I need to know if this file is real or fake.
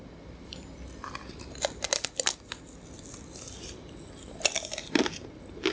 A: real